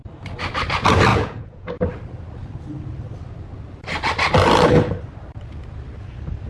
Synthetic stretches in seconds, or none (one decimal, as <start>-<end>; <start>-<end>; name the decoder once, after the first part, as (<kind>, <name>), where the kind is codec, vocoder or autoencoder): 1.1-1.7 (vocoder, Vocos)